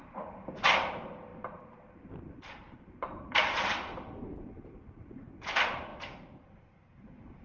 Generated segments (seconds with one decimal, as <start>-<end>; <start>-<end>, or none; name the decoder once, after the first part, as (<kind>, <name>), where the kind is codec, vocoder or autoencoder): 0.0-5.9 (vocoder, BigVGAN v2); 6.4-7.4